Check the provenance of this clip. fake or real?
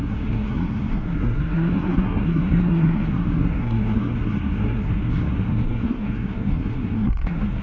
fake